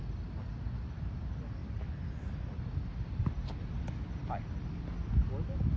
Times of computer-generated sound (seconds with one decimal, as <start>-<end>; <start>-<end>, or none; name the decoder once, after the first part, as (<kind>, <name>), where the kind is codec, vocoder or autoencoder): none